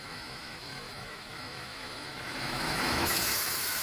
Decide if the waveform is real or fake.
fake